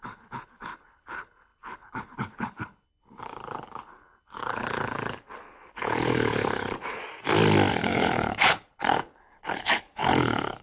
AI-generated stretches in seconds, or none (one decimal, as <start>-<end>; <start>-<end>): 0.0-7.0; 7.7-10.6